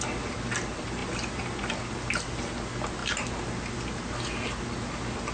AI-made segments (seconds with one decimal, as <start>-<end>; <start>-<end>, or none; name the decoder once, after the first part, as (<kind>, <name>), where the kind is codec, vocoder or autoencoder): none